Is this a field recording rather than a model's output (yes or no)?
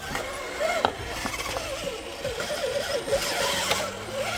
yes